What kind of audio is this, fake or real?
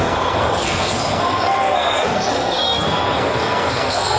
fake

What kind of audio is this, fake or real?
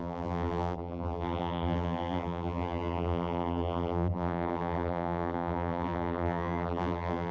fake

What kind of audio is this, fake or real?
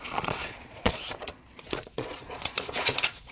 fake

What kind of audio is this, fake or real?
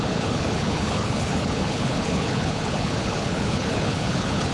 fake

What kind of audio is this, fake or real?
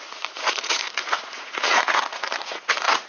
fake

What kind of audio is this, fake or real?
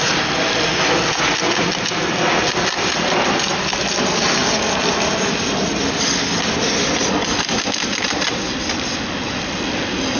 real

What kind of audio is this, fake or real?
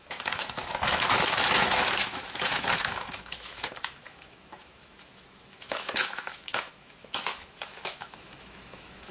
fake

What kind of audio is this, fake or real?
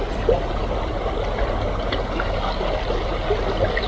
real